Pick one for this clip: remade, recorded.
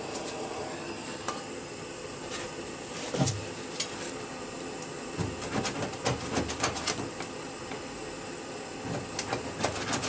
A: recorded